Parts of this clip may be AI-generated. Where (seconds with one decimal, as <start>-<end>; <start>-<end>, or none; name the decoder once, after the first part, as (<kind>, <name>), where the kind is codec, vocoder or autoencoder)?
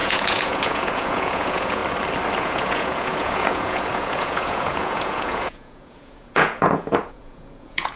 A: 0.0-1.8 (vocoder, Vocos); 2.4-8.0